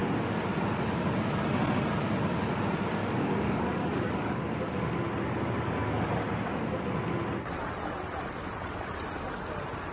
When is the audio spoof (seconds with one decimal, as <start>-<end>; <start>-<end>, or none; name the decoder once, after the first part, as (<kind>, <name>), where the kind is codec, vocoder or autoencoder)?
3.0-4.9 (codec, DAC)